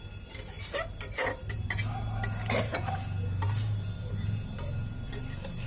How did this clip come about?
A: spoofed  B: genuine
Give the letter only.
B